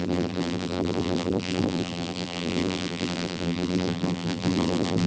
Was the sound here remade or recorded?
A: remade